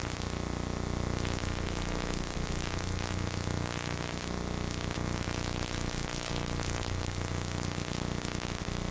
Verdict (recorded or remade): recorded